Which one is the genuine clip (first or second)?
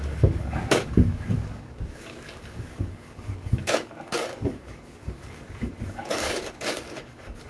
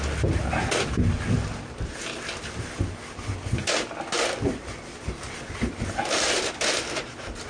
second